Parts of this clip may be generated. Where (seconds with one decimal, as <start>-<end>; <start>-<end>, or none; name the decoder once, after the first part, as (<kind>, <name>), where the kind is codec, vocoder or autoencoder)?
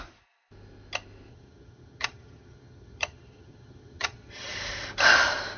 1.3-4.5 (vocoder, HiFi-GAN)